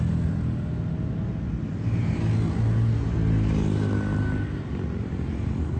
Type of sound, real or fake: real